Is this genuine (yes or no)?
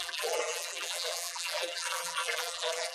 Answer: no